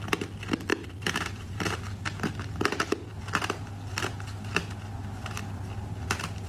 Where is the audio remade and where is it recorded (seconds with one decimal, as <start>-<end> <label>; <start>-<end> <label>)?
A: 0.0-0.7 recorded; 0.7-1.8 remade; 1.8-6.5 recorded